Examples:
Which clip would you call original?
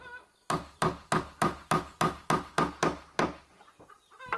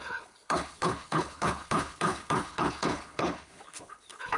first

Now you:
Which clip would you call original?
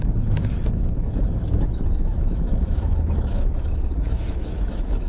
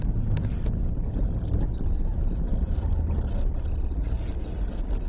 second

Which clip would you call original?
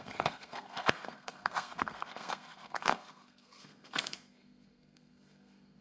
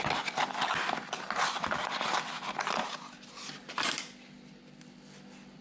second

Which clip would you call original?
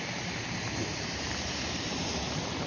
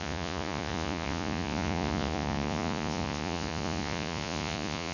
first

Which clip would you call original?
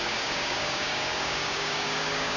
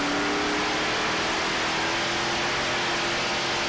second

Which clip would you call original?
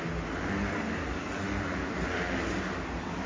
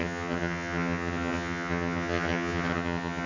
first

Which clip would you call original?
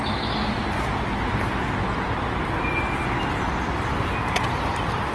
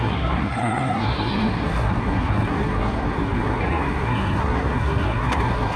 first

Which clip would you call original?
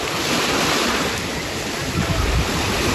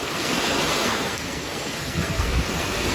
first